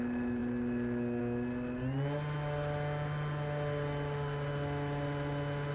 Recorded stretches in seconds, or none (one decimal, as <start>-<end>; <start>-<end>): 0.0-5.7